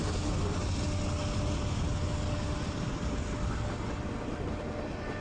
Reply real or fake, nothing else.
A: real